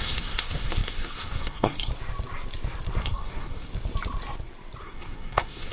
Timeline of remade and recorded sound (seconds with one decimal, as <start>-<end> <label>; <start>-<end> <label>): 0.0-1.9 remade; 1.9-3.0 recorded; 3.0-3.7 remade; 3.7-4.8 recorded; 4.8-5.7 remade